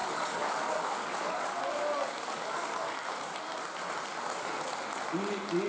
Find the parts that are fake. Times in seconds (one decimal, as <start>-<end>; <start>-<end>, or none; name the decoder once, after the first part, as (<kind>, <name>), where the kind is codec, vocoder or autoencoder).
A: 0.0-3.4 (codec, DAC); 4.1-4.6